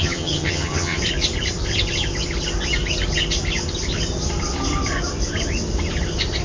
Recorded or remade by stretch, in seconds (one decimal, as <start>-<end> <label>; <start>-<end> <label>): 0.0-1.0 remade; 1.0-6.4 recorded